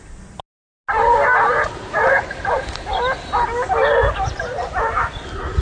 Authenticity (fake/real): real